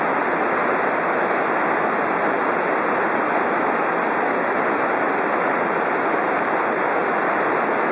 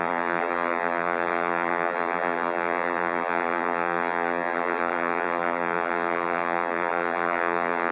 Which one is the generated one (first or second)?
second